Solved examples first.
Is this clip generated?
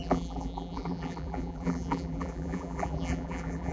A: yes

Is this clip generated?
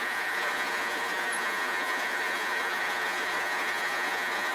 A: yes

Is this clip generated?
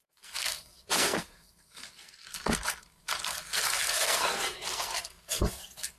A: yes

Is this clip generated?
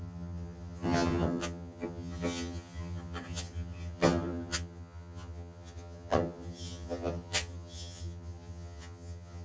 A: yes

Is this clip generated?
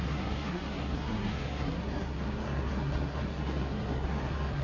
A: yes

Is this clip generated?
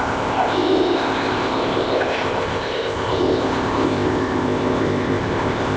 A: yes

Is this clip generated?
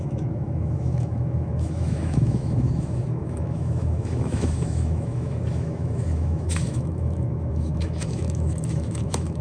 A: yes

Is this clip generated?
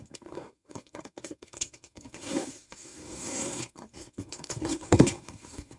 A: yes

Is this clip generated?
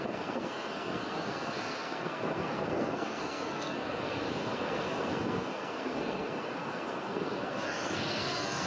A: yes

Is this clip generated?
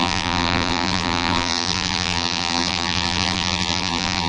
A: yes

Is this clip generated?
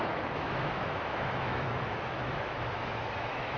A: yes